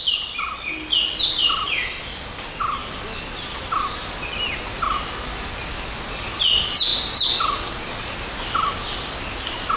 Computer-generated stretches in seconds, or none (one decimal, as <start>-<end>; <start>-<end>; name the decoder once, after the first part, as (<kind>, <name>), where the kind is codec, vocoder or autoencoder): none